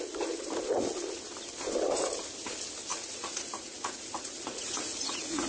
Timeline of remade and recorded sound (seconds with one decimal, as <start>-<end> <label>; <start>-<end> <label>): 0.0-2.9 recorded; 2.9-5.5 remade